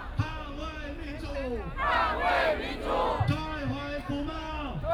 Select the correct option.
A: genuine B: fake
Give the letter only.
A